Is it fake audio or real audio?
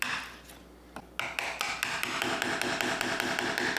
real